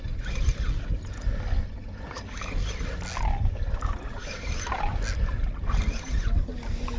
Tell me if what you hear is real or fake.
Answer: real